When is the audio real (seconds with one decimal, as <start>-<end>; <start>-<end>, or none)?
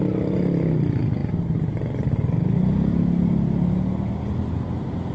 0.0-5.1